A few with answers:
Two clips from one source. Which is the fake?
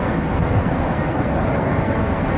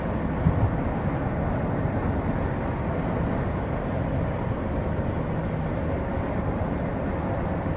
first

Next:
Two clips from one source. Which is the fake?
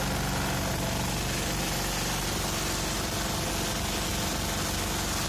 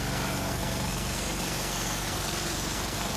second